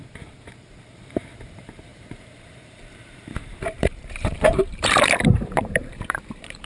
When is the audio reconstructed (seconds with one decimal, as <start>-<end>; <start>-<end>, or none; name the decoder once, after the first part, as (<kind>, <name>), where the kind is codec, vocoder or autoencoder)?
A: 0.0-6.7 (vocoder, BigVGAN v2)